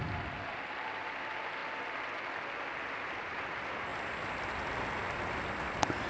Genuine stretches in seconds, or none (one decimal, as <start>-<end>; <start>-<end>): 0.0-6.1